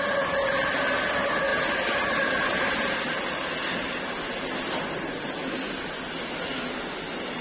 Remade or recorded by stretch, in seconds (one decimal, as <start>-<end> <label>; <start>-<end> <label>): 0.0-7.4 recorded